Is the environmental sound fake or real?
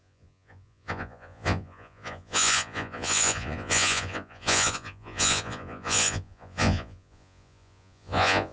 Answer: fake